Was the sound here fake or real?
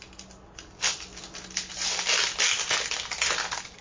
real